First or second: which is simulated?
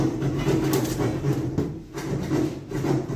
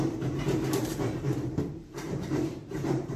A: second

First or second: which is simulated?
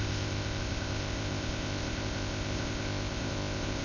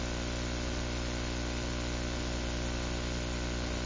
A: first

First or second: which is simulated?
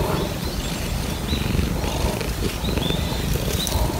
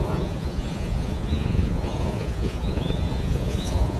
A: second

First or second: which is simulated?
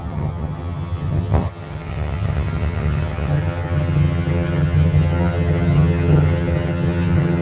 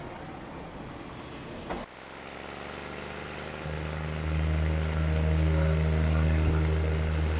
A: first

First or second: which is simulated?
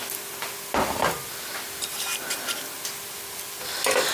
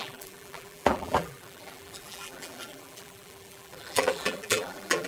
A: second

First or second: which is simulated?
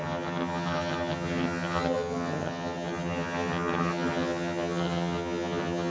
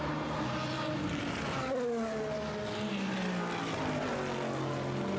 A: first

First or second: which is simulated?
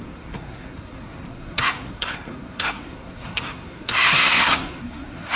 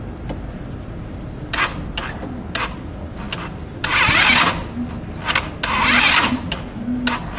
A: first